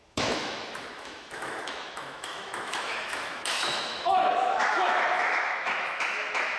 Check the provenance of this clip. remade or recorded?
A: remade